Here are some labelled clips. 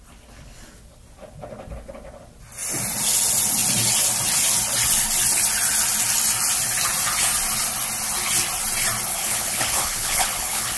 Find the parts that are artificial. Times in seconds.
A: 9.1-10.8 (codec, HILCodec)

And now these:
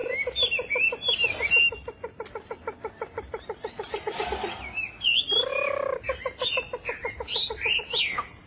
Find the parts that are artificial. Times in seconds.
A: none

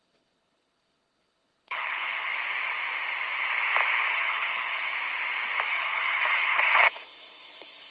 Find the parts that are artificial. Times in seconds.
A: 0.0-2.3 (codec, HILCodec); 4.1-4.9; 5.7-7.9